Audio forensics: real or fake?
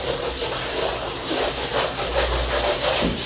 real